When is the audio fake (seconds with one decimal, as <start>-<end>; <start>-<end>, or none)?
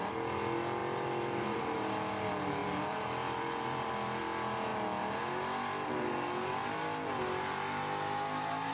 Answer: 0.8-1.6; 2.6-4.2